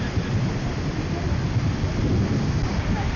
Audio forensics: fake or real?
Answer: real